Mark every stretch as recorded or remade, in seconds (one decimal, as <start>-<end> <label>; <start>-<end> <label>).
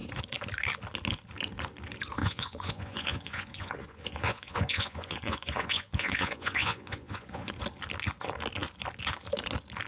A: 0.0-2.2 recorded; 2.2-7.5 remade; 7.5-9.9 recorded